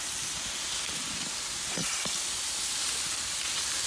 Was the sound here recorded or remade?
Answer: recorded